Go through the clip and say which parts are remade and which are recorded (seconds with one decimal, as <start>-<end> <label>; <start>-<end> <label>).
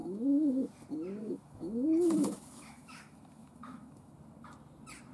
0.0-0.7 remade; 0.7-1.2 recorded; 1.2-4.1 remade; 4.1-5.1 recorded